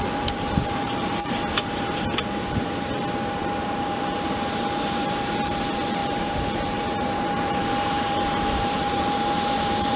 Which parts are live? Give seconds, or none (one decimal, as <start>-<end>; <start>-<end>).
none